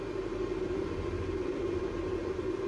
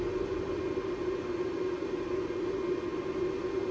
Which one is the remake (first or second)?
first